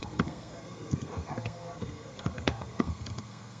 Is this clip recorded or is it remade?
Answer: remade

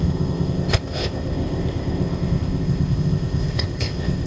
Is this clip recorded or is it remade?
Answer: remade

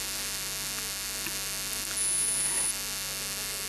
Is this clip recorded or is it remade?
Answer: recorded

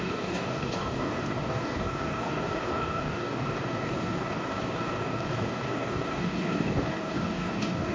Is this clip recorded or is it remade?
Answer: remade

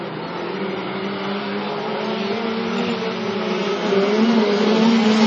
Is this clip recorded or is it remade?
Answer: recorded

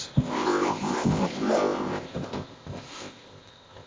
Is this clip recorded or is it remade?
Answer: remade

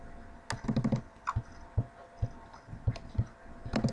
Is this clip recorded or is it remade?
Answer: recorded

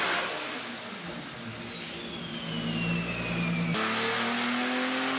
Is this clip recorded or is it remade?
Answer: recorded